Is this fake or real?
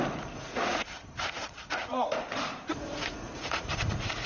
fake